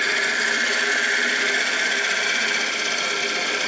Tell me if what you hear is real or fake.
real